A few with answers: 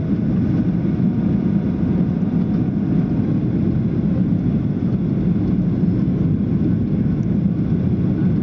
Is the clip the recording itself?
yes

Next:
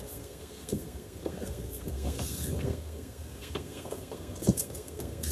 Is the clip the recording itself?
no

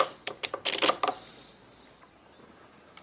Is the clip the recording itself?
yes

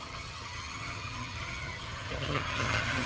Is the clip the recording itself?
no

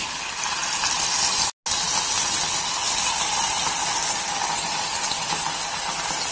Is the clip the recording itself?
yes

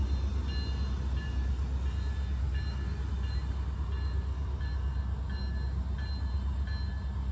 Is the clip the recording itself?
yes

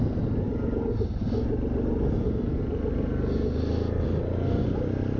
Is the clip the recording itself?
yes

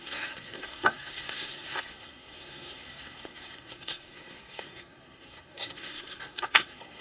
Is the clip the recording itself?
no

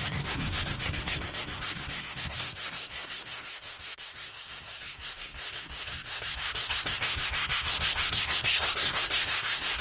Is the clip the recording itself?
no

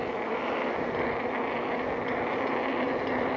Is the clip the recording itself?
yes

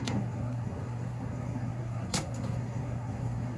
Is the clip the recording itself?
no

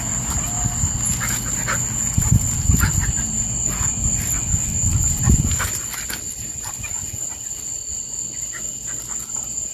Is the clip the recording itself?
yes